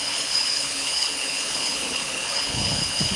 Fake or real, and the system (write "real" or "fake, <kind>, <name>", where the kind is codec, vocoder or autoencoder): fake, codec, HILCodec